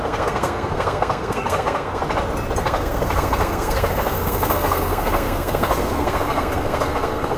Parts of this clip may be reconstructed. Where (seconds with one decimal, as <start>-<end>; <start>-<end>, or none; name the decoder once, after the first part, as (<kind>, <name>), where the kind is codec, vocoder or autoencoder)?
0.0-2.0 (codec, SNAC); 2.6-7.4